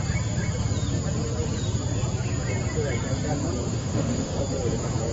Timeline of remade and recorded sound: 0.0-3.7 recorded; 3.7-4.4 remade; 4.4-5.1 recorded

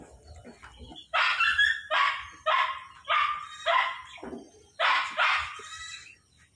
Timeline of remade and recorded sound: 0.0-6.6 recorded